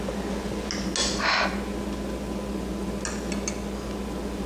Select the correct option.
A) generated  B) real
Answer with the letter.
B